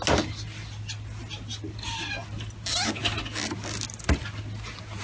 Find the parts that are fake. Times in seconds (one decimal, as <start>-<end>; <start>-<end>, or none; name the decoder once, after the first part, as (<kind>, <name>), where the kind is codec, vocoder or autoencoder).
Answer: none